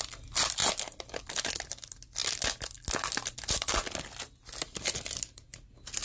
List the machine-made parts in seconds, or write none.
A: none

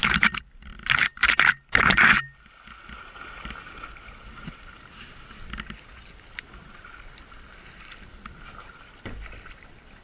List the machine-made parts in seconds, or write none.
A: none

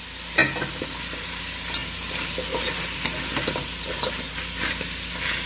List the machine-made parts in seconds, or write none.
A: none

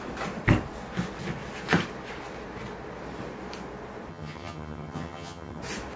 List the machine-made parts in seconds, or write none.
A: 4.1-5.6 (vocoder, HiFi-GAN)

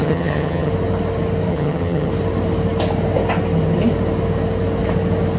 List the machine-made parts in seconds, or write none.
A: 0.0-0.7 (vocoder, HiFi-GAN); 1.5-2.1

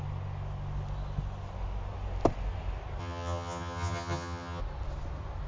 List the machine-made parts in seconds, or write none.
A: 3.0-4.6 (vocoder, HiFi-GAN)